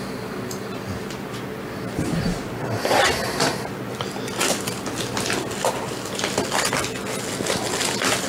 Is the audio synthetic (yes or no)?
no